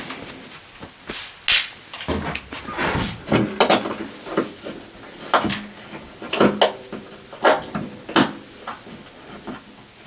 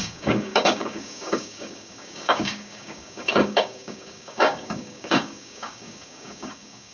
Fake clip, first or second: second